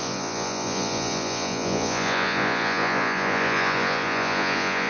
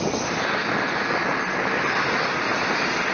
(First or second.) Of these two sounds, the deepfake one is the first